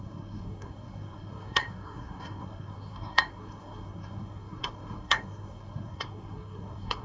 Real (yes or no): no